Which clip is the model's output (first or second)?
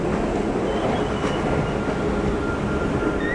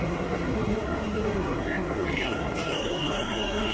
second